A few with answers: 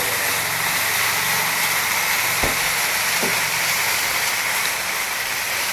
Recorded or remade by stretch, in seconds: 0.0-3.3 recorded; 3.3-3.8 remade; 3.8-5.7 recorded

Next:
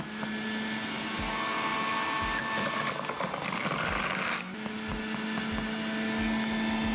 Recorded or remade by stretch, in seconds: 0.0-6.9 recorded

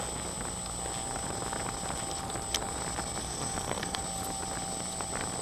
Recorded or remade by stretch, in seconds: 0.0-3.2 recorded; 3.2-4.0 remade; 4.0-5.4 recorded

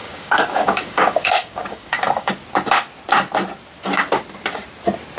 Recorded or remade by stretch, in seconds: 0.0-2.3 remade; 2.3-5.2 recorded

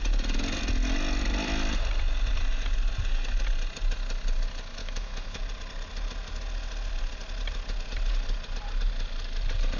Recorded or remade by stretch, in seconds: 0.0-4.8 recorded; 4.8-5.4 remade; 5.4-9.8 recorded

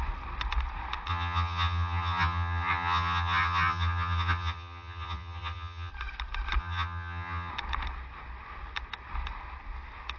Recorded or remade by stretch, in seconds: 0.0-1.1 recorded; 1.1-5.9 remade; 5.9-6.6 recorded; 6.6-7.5 remade; 7.5-10.2 recorded

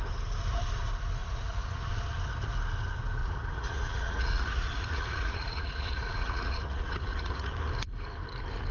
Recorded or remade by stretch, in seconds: 0.0-1.2 recorded; 1.2-1.9 remade; 1.9-3.2 recorded; 3.2-7.5 remade; 7.5-8.7 recorded

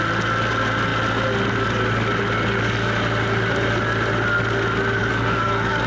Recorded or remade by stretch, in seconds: 0.0-5.0 recorded; 5.0-5.9 remade